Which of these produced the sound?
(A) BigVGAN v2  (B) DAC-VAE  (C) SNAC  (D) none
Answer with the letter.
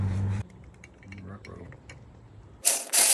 A